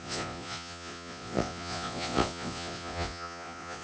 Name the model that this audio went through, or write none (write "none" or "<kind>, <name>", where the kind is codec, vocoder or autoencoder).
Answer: vocoder, Vocos